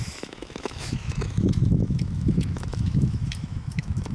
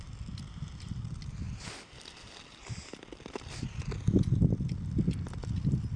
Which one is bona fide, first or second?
second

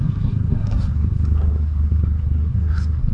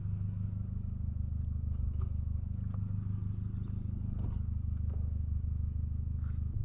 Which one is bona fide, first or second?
second